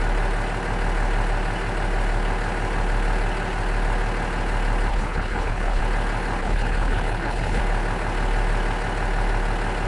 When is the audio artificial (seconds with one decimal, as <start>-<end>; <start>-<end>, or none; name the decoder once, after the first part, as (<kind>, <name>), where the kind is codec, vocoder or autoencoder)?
4.9-5.8 (codec, HILCodec); 6.4-7.6